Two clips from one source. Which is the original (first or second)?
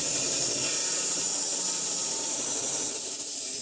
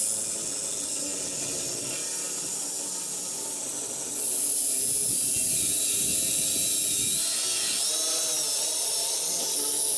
second